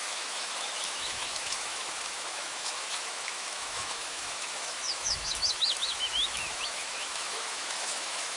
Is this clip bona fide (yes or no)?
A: no